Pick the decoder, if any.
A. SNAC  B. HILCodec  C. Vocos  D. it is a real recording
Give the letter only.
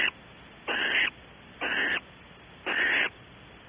D